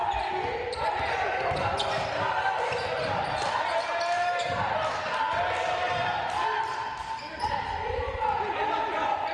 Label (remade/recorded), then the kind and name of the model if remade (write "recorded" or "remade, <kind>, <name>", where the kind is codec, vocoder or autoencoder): recorded